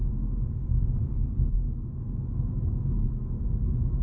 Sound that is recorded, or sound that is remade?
remade